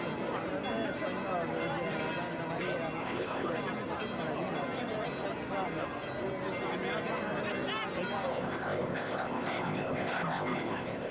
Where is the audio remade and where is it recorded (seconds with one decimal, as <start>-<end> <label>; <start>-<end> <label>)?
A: 0.0-3.0 recorded; 3.0-3.5 remade; 3.5-8.3 recorded; 8.3-11.1 remade